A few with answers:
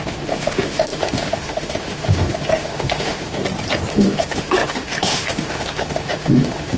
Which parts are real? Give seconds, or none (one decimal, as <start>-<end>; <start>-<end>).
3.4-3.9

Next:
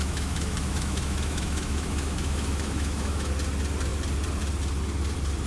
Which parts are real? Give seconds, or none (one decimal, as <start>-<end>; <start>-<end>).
3.3-5.5

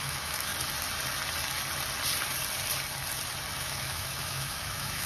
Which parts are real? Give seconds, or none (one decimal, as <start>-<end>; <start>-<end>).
0.5-3.6

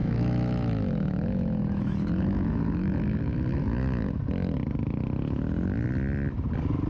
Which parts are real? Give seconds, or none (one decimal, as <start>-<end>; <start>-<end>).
4.1-6.9

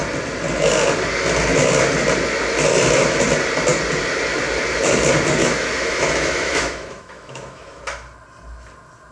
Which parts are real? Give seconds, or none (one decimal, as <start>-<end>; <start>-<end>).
0.0-5.4; 7.8-9.1

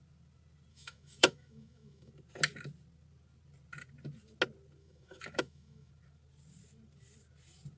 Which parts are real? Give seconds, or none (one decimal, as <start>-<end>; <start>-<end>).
0.0-0.7; 2.1-4.8; 5.9-7.8

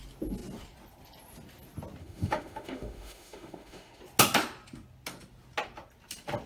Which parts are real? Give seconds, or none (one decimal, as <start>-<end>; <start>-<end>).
0.0-2.0; 4.0-6.5

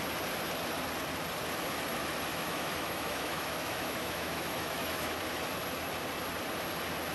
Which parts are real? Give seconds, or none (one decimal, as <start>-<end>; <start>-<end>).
0.0-2.3; 5.2-7.1